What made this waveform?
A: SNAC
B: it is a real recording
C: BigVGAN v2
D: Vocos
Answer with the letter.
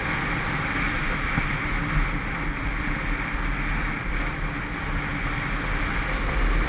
B